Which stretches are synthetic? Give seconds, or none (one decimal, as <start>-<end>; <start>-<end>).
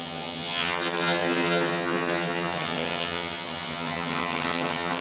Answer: 0.0-5.0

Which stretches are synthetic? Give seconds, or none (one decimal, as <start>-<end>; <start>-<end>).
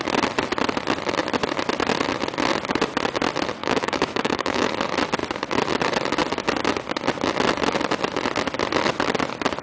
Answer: 3.6-4.7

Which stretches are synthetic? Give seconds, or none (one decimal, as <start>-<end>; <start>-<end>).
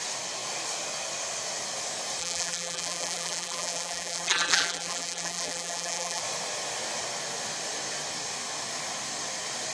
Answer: 2.2-6.2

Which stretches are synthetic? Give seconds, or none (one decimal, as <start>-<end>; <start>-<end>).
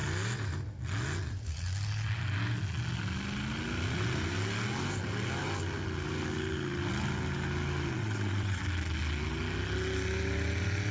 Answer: 8.0-8.6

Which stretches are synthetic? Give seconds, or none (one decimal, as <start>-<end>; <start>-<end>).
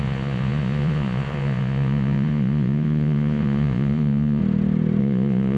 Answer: 0.0-4.4; 5.0-5.6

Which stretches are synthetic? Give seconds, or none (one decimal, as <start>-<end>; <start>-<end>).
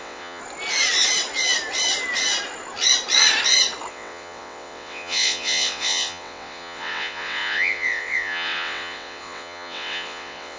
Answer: 0.0-0.4; 3.9-10.6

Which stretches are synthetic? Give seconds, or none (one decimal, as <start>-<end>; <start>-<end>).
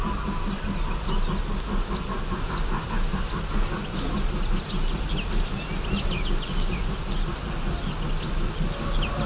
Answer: none